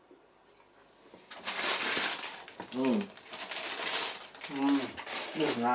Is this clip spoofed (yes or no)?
no